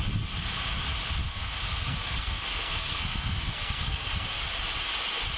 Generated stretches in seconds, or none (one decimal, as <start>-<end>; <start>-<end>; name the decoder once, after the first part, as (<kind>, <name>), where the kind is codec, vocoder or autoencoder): 1.3-4.5 (codec, SNAC)